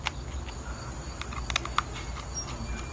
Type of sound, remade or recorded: recorded